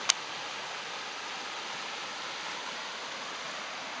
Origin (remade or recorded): recorded